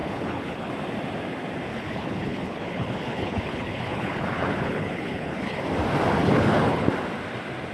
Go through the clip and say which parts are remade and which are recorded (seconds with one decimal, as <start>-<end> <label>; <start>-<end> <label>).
0.0-0.7 remade; 0.7-1.7 recorded; 1.7-5.6 remade; 5.6-6.2 recorded; 6.2-6.9 remade; 6.9-7.7 recorded